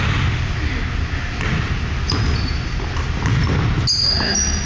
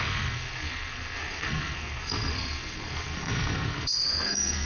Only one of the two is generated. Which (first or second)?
second